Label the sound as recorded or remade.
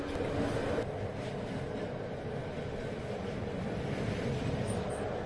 recorded